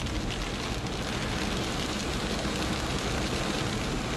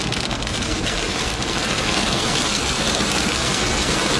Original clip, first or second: first